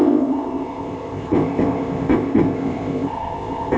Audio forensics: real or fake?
fake